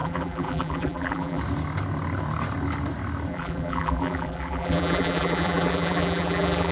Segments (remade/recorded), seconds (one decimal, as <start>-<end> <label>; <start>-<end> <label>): 0.0-1.4 remade; 1.4-3.3 recorded; 3.3-6.7 remade